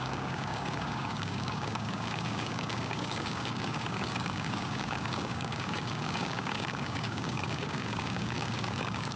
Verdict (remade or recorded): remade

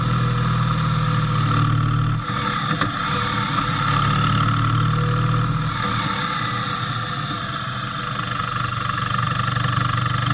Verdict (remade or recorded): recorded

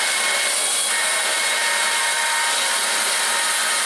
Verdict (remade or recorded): recorded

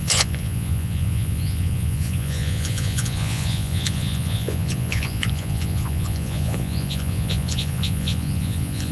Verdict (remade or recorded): remade